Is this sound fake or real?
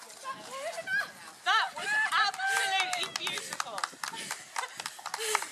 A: real